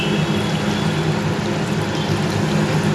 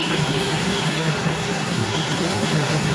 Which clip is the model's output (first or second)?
second